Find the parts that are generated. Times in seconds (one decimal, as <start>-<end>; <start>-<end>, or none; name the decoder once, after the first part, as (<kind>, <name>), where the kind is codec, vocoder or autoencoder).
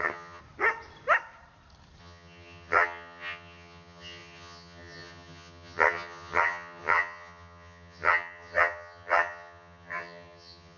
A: 0.0-0.4 (vocoder, HiFi-GAN); 2.0-10.8